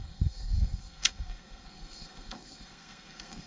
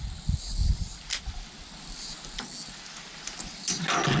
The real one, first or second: second